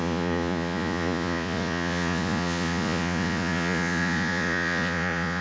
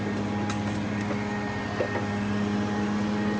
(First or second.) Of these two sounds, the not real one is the first